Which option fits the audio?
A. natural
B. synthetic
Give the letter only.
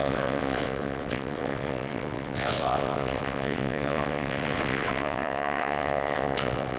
B